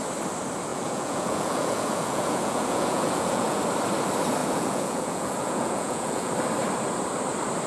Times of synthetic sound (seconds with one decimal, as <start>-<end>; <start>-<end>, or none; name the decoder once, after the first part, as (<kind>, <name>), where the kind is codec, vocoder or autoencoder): 0.7-3.6 (vocoder, Vocos); 4.4-6.3